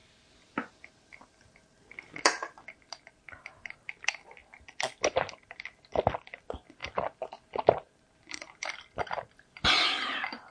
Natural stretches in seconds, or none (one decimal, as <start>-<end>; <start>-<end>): 0.0-6.8; 8.8-10.5